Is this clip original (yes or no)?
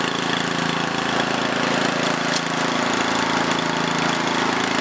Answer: yes